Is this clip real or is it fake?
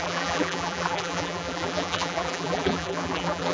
fake